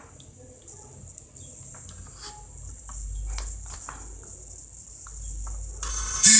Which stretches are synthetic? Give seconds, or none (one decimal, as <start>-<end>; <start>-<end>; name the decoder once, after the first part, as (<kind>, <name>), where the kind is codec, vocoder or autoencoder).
5.9-6.4 (autoencoder, DAC-VAE)